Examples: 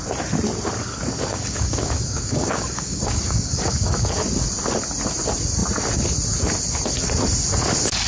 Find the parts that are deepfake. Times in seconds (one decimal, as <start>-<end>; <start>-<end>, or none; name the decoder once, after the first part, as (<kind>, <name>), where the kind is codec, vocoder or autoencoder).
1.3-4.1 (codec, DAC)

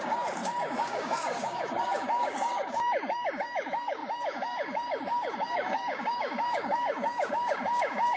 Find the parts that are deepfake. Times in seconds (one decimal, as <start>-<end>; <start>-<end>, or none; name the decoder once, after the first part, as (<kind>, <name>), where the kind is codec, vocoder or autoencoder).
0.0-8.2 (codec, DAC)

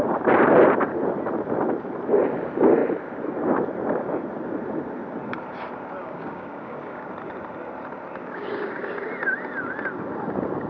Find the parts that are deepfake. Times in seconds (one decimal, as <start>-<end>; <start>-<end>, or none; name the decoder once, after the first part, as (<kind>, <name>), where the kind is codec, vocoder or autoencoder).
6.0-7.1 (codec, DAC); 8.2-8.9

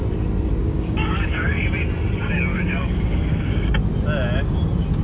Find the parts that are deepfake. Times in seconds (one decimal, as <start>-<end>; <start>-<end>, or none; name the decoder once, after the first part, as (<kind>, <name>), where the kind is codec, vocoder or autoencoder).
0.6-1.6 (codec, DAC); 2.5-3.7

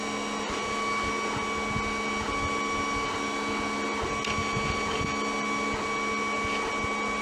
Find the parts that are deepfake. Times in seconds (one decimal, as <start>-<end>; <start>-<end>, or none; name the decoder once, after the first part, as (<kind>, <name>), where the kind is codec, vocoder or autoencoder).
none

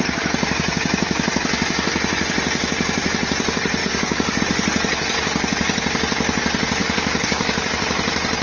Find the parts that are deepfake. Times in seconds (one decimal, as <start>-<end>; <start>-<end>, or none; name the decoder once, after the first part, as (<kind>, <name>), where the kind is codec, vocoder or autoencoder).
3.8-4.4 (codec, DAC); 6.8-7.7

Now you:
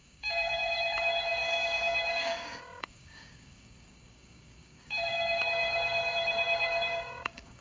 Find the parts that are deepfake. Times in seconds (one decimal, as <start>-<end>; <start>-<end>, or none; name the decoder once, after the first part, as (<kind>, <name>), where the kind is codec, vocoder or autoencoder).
0.0-7.6 (codec, DAC)